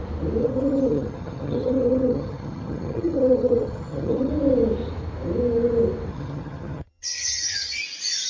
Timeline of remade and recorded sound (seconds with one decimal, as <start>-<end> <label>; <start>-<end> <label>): 0.0-0.4 recorded; 0.4-4.3 remade; 4.3-6.1 recorded; 6.1-7.8 remade; 7.8-8.3 recorded